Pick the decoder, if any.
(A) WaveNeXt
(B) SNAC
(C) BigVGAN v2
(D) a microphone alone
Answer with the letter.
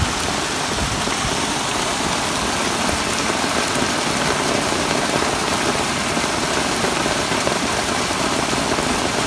D